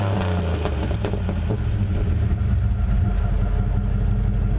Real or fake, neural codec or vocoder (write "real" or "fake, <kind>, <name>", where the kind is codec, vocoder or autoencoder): real